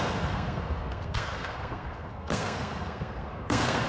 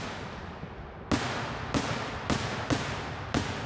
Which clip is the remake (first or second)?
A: first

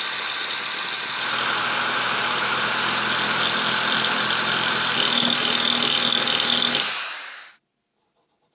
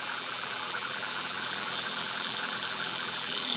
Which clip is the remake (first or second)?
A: second